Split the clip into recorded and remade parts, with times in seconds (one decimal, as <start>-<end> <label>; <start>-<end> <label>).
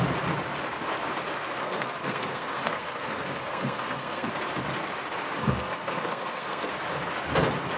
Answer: 0.0-1.6 recorded; 1.6-4.3 remade; 4.3-5.4 recorded; 5.4-6.7 remade; 6.7-7.8 recorded